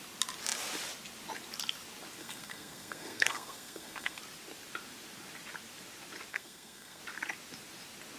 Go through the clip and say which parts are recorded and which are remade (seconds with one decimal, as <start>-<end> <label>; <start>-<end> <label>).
0.0-2.2 recorded; 2.2-4.2 remade; 4.2-6.3 recorded; 6.3-7.0 remade; 7.0-8.2 recorded